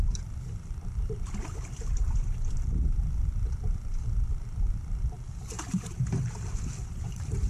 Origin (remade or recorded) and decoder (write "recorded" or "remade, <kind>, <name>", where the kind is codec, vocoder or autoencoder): remade, vocoder, BigVGAN v2